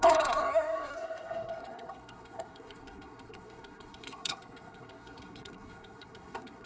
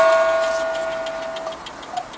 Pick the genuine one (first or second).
second